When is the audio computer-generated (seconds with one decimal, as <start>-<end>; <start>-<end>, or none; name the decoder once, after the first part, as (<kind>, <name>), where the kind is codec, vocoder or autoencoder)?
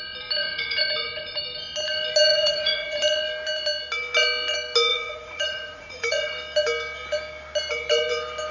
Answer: 0.4-1.4 (vocoder, Vocos); 2.3-3.0; 4.9-6.3